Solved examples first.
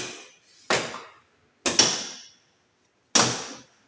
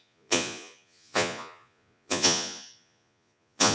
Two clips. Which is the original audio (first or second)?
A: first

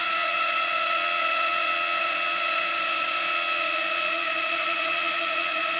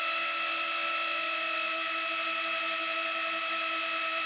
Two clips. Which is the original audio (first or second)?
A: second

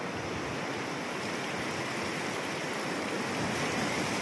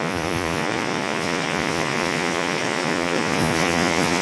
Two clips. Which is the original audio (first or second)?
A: first